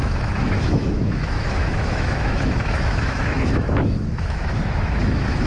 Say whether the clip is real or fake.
fake